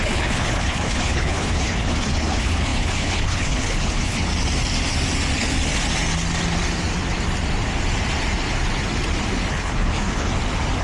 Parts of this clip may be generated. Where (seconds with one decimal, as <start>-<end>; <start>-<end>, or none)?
0.0-4.3; 9.5-10.3

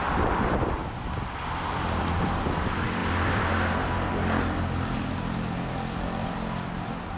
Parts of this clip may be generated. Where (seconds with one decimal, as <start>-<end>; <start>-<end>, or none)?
0.0-0.8; 2.0-3.0

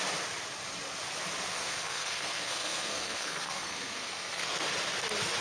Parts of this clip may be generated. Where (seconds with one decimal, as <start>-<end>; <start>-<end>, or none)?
1.5-4.6

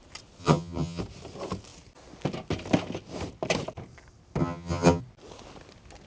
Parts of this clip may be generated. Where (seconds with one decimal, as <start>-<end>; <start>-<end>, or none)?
0.4-1.0; 4.4-5.0